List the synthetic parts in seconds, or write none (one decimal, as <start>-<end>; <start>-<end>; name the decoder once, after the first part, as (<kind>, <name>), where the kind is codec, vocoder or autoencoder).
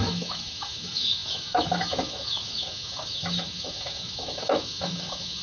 0.0-5.4 (autoencoder, DAC-VAE)